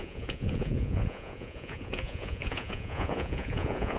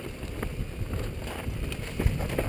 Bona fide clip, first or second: second